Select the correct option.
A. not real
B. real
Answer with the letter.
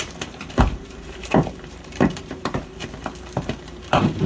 A